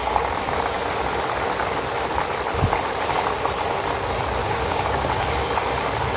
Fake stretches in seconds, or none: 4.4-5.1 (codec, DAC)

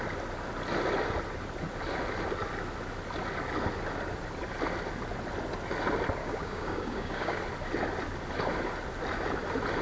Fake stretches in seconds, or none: 6.2-7.4 (codec, DAC)

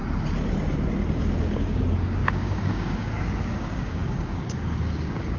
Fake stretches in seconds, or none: 1.6-5.4 (codec, DAC)

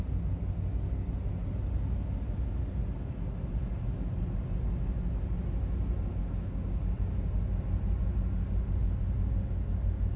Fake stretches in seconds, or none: 6.1-6.8 (codec, DAC)

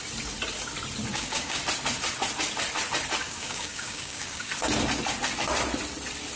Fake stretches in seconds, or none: 1.1-1.6 (codec, DAC); 3.2-4.5

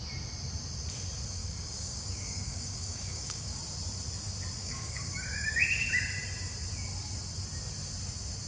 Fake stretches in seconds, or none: 1.4-3.6 (codec, DAC); 4.6-5.6

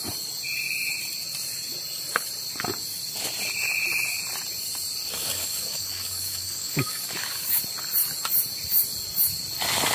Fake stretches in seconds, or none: 5.1-7.6 (codec, DAC)

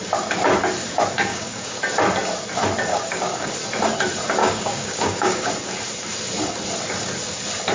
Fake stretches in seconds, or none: 1.3-1.8 (codec, DAC); 2.9-3.5; 4.4-5.5